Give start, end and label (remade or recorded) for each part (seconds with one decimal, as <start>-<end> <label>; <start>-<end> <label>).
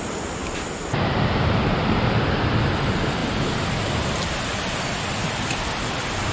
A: 0.0-6.3 recorded